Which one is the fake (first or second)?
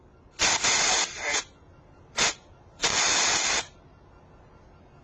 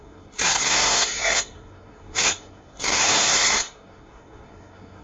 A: second